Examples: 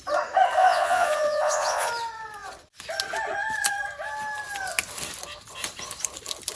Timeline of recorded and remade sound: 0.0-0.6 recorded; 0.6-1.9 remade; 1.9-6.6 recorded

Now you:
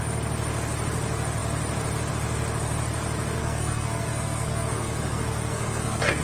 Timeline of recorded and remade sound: 0.0-3.4 recorded; 3.4-6.2 remade